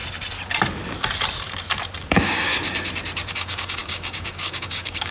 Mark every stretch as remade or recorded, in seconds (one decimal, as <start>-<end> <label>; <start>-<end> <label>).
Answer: 0.0-2.0 recorded; 2.0-2.5 remade; 2.5-3.3 recorded; 3.3-5.1 remade